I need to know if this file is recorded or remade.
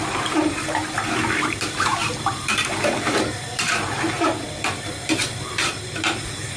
remade